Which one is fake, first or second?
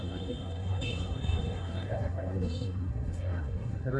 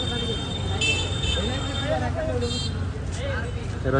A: first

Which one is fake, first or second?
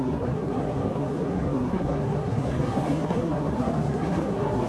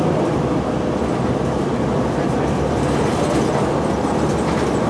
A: first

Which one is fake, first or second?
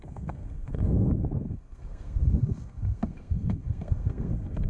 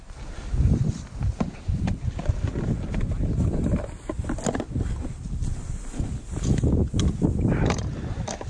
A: first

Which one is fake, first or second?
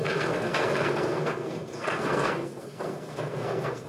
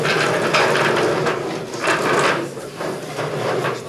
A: first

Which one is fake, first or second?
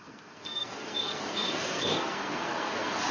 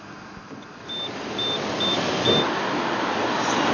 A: first